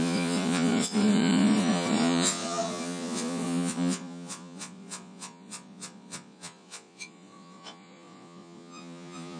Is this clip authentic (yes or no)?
no